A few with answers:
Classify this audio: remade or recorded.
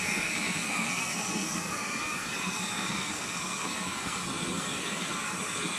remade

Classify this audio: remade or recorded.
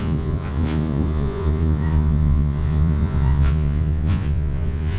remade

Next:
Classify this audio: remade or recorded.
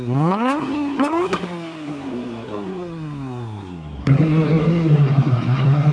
remade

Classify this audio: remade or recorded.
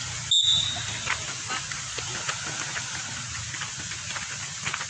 recorded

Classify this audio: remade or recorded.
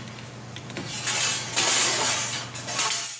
recorded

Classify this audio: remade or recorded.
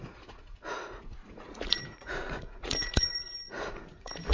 remade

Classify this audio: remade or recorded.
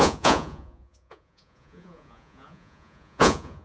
remade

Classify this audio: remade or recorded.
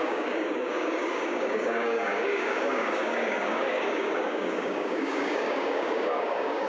remade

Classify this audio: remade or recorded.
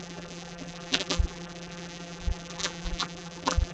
remade